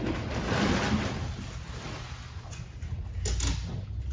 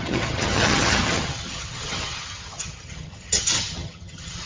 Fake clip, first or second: second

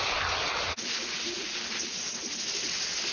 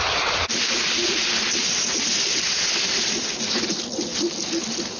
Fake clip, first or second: second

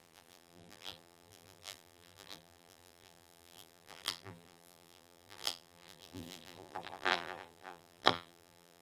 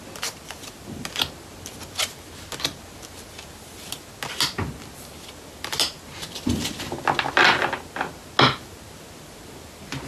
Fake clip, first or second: first